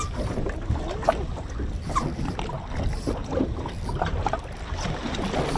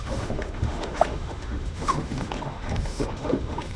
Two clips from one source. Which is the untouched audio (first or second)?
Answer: first